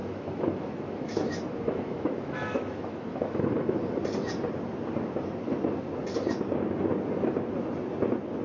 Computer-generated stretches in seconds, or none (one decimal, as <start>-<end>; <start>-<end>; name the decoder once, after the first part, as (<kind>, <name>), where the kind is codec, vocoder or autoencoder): 0.0-4.0 (autoencoder, DAC-VAE)